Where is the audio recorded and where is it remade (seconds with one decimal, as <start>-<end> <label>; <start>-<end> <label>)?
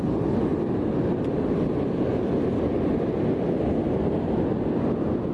0.0-5.3 recorded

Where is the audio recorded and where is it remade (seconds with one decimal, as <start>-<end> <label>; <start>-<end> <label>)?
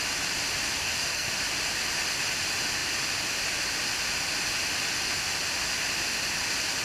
0.0-0.8 recorded; 0.8-1.3 remade; 1.3-6.8 recorded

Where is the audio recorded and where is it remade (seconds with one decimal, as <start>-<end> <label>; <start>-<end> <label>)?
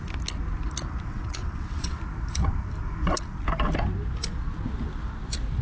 0.0-1.1 recorded; 1.1-2.0 remade; 2.0-5.6 recorded